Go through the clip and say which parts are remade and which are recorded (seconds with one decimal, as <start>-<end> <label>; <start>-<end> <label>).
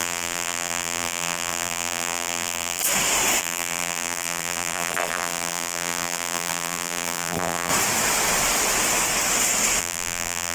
0.0-2.8 remade; 2.8-3.4 recorded; 3.4-7.7 remade; 7.7-9.8 recorded; 9.8-10.5 remade